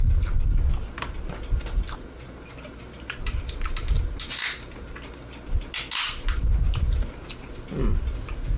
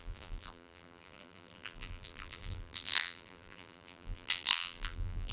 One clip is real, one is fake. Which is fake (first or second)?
second